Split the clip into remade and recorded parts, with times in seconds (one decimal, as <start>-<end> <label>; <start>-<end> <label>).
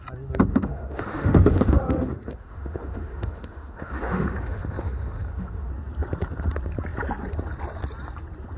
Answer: 0.0-0.5 recorded; 0.5-5.7 remade; 5.7-8.6 recorded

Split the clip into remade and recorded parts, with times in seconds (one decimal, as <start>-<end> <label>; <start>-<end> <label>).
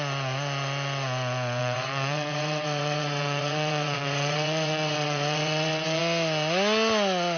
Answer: 0.0-1.6 recorded; 1.6-6.0 remade; 6.0-7.4 recorded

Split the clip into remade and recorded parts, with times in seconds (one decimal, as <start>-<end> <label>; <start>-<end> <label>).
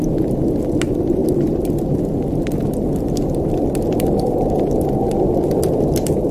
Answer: 0.0-6.3 recorded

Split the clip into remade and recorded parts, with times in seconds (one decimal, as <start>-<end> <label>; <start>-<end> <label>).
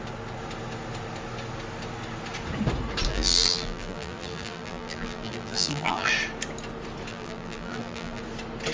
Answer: 0.0-3.1 recorded; 3.1-6.1 remade; 6.1-7.1 recorded; 7.1-8.2 remade; 8.2-8.7 recorded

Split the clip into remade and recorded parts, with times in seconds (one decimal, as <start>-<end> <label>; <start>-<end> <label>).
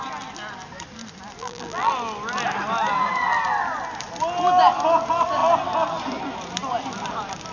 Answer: 0.0-1.4 recorded; 1.4-1.9 remade; 1.9-7.5 recorded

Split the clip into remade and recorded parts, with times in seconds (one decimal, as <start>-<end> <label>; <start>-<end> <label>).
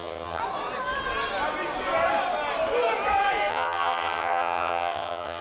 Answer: 0.0-0.4 remade; 0.4-3.5 recorded; 3.5-5.4 remade